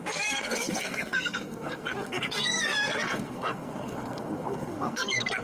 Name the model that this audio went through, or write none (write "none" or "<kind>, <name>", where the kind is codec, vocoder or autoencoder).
codec, SNAC